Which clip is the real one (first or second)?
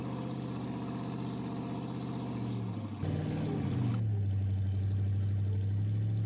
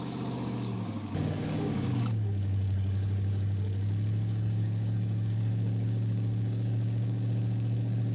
first